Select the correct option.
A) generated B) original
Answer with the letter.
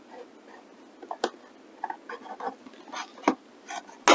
B